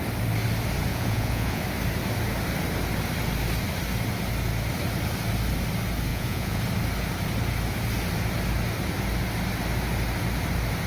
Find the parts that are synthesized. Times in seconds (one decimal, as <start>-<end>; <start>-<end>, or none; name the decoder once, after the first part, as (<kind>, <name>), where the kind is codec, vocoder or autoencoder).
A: 0.9-1.6 (vocoder, Vocos); 6.1-6.6